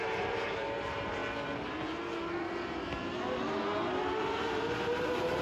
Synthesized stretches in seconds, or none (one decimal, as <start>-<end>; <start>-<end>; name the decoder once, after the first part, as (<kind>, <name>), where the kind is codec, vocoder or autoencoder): 0.0-1.2 (vocoder, BigVGAN v2); 4.4-5.4